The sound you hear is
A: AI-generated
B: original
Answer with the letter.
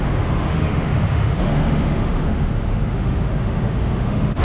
A